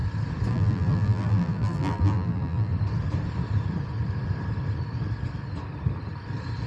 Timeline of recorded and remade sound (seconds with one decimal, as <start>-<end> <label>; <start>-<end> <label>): 0.0-0.5 recorded; 0.5-2.7 remade; 2.7-6.7 recorded